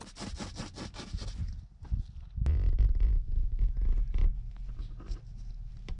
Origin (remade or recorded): recorded